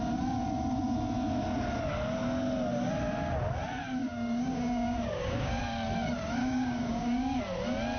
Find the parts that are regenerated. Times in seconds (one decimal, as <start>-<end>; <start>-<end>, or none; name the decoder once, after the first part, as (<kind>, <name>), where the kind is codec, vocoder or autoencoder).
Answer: 4.0-5.6 (codec, DAC); 6.4-7.4